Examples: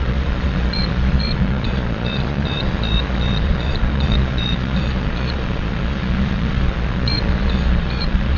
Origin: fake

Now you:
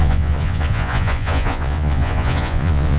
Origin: fake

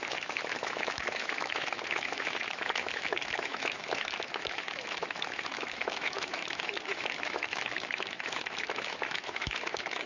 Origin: fake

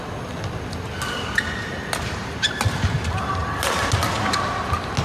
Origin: real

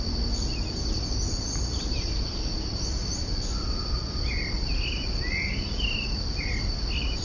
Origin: real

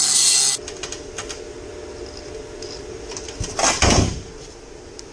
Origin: real